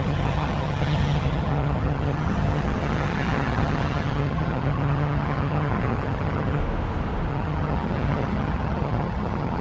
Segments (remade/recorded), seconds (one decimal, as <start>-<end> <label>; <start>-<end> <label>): 0.0-6.6 remade; 6.6-7.3 recorded; 7.3-9.6 remade